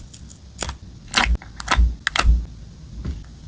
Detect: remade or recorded recorded